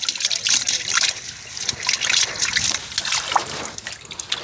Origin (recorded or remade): recorded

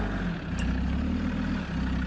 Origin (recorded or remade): recorded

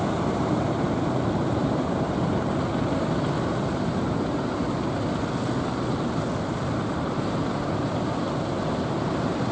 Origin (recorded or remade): recorded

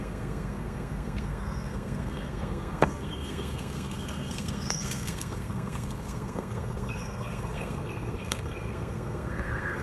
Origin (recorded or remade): remade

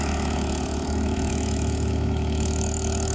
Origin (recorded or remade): remade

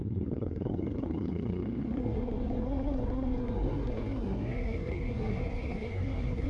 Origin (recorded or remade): remade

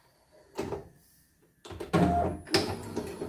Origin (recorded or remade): recorded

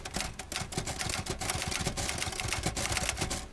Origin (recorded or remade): recorded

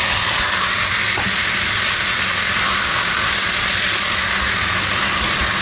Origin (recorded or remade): recorded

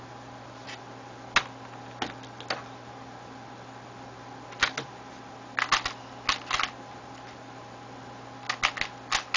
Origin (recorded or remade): recorded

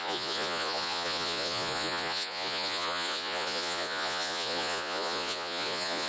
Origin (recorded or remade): remade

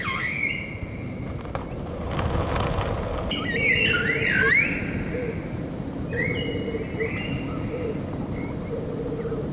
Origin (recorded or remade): recorded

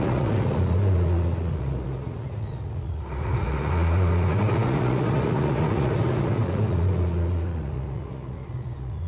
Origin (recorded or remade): remade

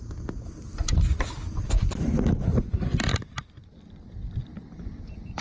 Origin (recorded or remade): recorded